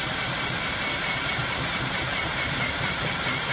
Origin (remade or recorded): remade